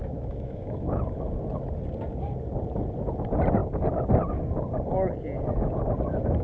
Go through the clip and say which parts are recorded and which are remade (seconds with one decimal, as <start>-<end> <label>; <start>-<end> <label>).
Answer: 0.0-1.0 remade; 1.0-6.4 recorded